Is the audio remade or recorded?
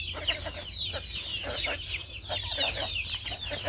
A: recorded